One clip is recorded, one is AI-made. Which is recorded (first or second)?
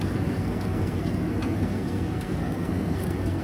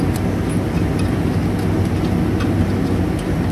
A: second